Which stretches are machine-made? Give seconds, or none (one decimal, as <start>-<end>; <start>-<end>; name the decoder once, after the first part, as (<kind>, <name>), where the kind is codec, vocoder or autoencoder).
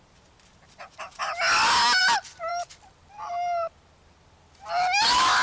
none